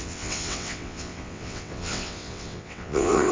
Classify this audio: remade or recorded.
remade